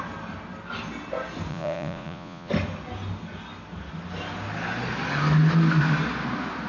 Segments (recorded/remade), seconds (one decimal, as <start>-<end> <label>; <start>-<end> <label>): 0.0-1.5 recorded; 1.5-2.5 remade; 2.5-6.7 recorded